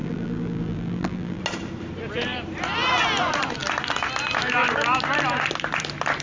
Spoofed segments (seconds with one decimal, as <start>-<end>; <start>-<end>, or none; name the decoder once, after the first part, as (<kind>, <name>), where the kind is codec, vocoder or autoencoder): 0.0-1.4 (vocoder, BigVGAN v2)